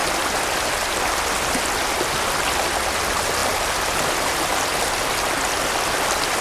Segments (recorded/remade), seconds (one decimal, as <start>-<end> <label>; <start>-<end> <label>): 0.0-6.4 recorded